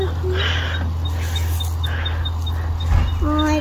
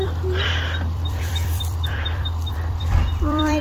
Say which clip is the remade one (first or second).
second